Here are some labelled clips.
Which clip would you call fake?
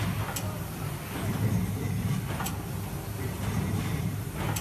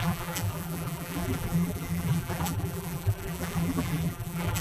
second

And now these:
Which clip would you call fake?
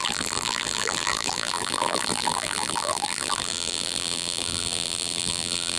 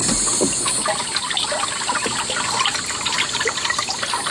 first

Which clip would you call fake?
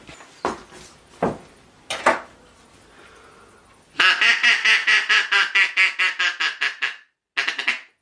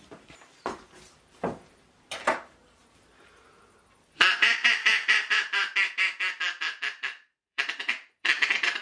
second